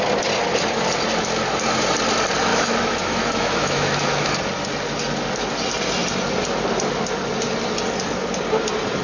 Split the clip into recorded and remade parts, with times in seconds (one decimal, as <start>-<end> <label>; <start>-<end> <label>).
0.0-2.5 recorded; 2.5-4.4 remade; 4.4-9.0 recorded